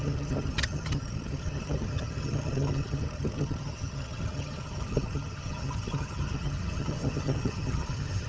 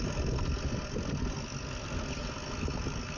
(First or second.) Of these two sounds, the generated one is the first